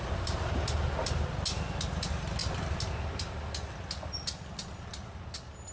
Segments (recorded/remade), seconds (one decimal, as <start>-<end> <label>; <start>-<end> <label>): 0.0-5.7 recorded